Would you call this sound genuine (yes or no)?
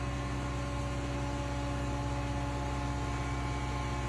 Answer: yes